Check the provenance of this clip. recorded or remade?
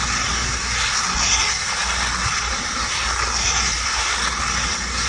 recorded